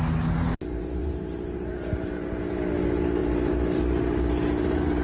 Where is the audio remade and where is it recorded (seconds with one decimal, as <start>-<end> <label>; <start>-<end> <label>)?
0.0-1.0 recorded; 1.0-1.8 remade; 1.8-3.2 recorded; 3.2-3.8 remade; 3.8-5.0 recorded